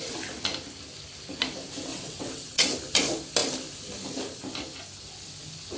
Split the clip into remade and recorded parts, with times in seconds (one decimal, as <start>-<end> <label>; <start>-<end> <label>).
0.0-1.9 recorded; 1.9-2.7 remade; 2.7-5.8 recorded